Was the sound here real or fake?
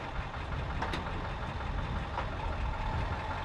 real